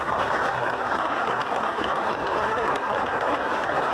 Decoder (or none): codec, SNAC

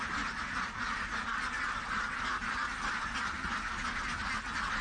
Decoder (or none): none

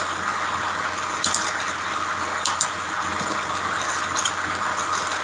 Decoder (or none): none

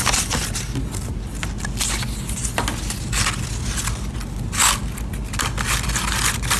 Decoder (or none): none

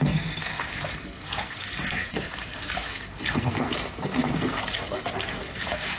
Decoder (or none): codec, SNAC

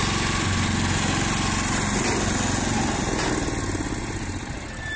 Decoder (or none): none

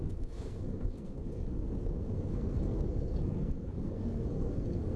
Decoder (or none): codec, SNAC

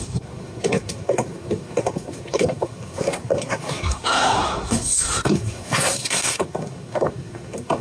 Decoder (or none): codec, SNAC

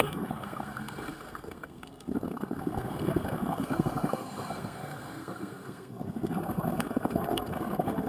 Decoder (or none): codec, SNAC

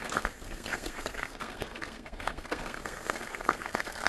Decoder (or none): codec, SNAC